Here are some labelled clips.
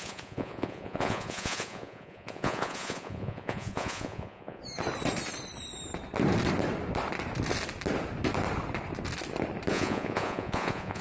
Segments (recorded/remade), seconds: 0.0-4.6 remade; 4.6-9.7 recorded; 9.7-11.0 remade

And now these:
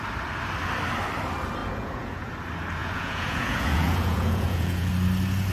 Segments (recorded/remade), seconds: 0.0-1.6 recorded; 1.6-2.3 remade; 2.3-2.8 recorded; 2.8-4.9 remade; 4.9-5.5 recorded

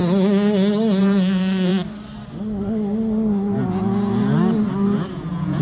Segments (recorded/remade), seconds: 0.0-1.0 recorded; 1.0-1.7 remade; 1.7-5.1 recorded; 5.1-5.6 remade

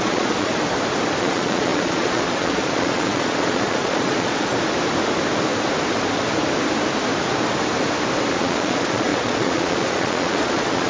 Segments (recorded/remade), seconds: 0.0-0.5 remade; 0.5-1.2 recorded; 1.2-4.5 remade; 4.5-8.3 recorded; 8.3-10.9 remade

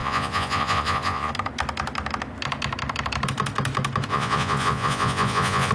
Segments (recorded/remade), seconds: 0.0-1.3 remade; 1.3-4.1 recorded; 4.1-5.7 remade

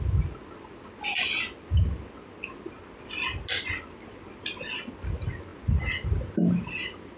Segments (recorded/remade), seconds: 0.0-7.2 recorded

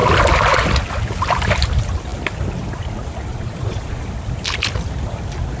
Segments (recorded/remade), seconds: 0.0-3.3 recorded; 3.3-4.0 remade; 4.0-5.6 recorded